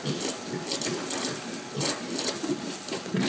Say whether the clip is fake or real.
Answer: real